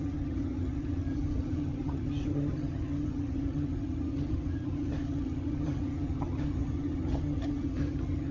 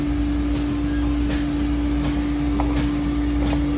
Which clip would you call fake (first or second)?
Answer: first